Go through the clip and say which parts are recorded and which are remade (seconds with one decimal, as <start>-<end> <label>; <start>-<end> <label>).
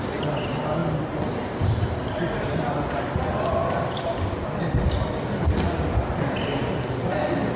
0.0-7.6 recorded